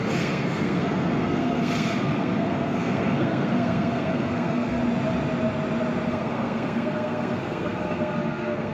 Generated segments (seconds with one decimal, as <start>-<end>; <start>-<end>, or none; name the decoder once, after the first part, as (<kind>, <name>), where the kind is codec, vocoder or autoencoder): 0.0-4.8 (codec, SNAC); 6.1-8.7

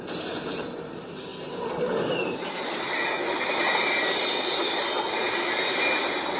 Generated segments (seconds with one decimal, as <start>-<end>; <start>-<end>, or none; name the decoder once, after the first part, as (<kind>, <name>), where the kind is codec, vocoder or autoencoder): none

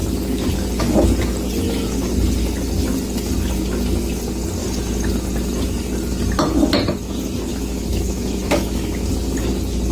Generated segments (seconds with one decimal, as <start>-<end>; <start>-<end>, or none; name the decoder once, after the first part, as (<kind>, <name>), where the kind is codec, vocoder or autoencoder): 7.5-9.1 (autoencoder, DAC-VAE)